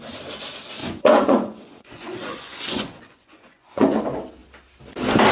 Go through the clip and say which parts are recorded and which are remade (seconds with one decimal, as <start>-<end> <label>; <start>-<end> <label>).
0.0-0.8 recorded; 0.8-4.0 remade; 4.0-5.3 recorded